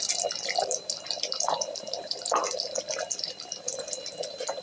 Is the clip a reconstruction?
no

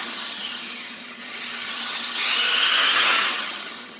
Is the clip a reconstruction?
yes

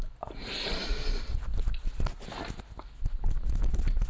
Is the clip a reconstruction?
no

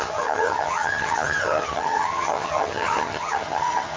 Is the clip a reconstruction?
yes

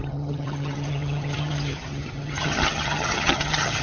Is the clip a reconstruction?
yes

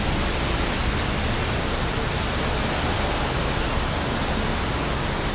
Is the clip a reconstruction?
no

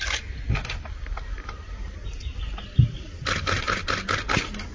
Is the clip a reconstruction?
no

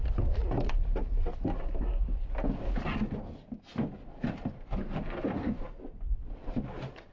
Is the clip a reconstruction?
no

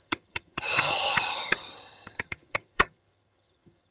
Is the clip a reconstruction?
yes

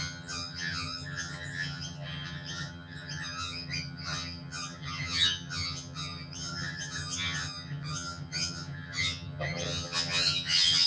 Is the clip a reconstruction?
yes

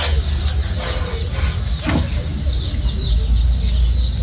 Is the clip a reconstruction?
no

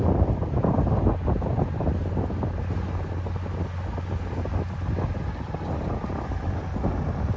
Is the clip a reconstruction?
no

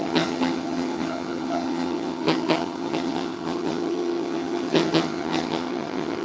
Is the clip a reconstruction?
yes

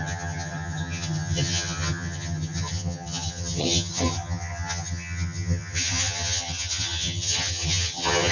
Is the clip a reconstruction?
yes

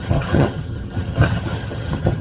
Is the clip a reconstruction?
yes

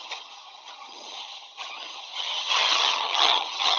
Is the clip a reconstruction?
yes